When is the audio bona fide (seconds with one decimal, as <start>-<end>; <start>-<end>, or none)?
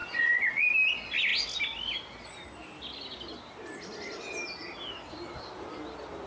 0.5-6.3